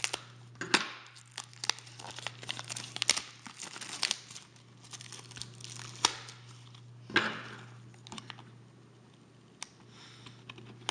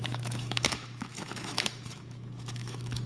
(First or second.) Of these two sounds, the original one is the first